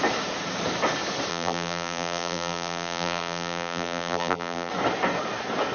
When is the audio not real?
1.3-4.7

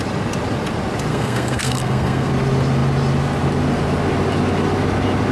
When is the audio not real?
1.1-2.3

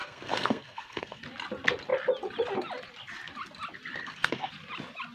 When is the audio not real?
0.0-1.2; 4.0-4.5

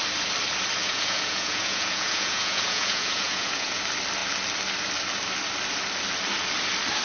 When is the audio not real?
0.8-3.8

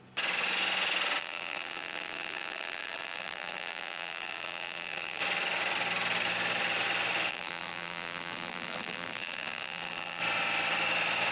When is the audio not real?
1.2-5.2; 7.3-10.2

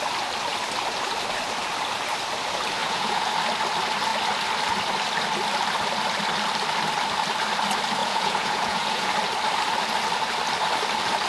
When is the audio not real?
2.8-3.3; 8.0-9.1

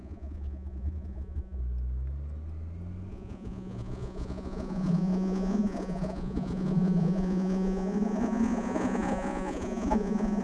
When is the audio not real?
0.0-1.6; 3.1-10.4